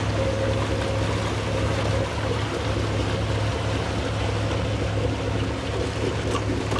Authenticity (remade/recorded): recorded